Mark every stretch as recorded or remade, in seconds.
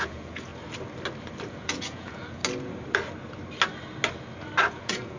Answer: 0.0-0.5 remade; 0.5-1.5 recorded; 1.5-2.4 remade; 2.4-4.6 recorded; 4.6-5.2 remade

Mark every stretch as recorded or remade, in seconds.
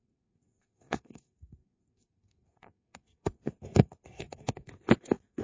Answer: 0.0-5.4 remade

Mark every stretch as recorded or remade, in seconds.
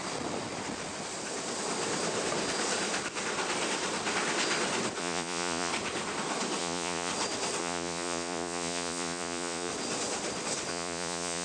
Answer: 0.0-5.0 recorded; 5.0-5.7 remade; 5.7-6.6 recorded; 6.6-7.1 remade; 7.1-7.6 recorded; 7.6-9.7 remade; 9.7-10.7 recorded; 10.7-11.4 remade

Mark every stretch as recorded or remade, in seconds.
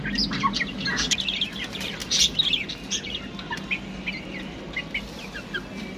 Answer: 0.0-6.0 recorded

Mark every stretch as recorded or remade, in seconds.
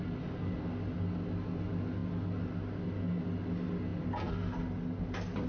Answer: 0.0-5.5 recorded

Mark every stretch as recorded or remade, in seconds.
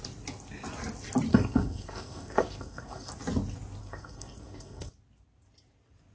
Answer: 0.0-1.3 recorded; 1.3-3.1 remade; 3.1-3.8 recorded; 3.8-4.9 remade; 4.9-6.1 recorded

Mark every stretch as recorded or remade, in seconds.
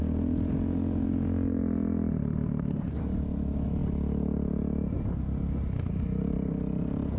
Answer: 0.0-7.2 recorded